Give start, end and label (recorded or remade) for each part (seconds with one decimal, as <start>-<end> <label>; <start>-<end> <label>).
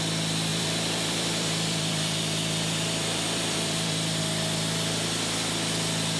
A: 0.0-0.5 recorded; 0.5-4.2 remade; 4.2-6.2 recorded